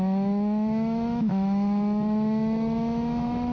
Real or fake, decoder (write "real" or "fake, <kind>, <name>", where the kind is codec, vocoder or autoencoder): fake, autoencoder, DAC-VAE